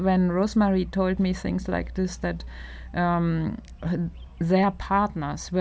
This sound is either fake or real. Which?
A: real